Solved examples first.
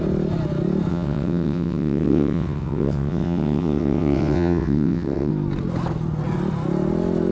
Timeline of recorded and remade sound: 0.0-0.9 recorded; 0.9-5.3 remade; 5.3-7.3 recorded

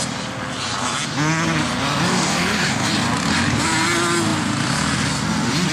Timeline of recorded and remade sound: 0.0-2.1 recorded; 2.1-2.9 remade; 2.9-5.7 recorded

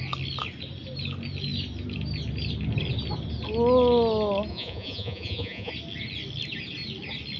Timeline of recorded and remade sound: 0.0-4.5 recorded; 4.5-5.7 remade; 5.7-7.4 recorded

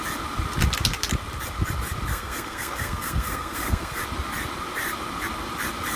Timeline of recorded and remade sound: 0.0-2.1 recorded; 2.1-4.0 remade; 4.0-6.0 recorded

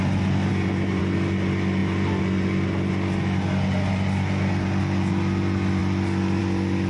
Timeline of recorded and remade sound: 0.0-6.9 recorded

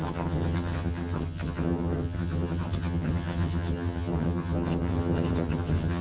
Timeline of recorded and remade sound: 0.0-6.0 remade